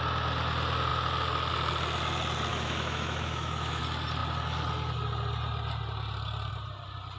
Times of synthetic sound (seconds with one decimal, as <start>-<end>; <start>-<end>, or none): 2.5-3.8